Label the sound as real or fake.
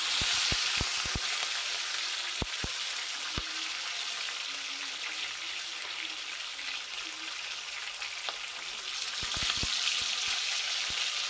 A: real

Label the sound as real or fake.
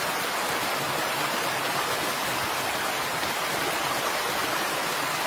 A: real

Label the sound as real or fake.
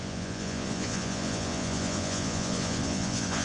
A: fake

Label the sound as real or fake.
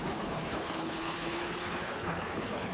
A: fake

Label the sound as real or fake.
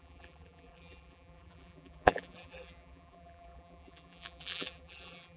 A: fake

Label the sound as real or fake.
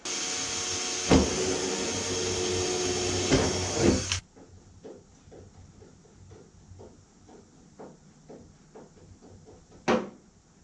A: real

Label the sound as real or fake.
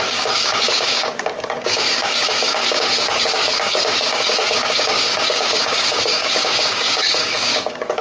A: fake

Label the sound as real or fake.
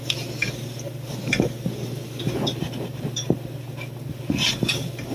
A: real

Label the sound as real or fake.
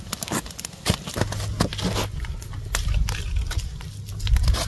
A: real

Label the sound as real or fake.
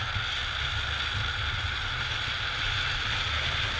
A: real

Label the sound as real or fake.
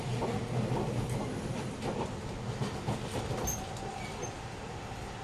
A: real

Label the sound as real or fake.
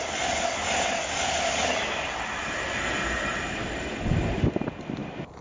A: real